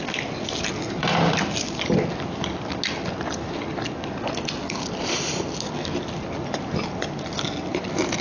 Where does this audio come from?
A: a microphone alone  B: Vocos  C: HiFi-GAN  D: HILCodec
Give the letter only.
A